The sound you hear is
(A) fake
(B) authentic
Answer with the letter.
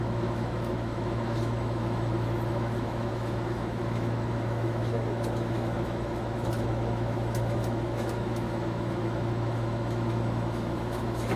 A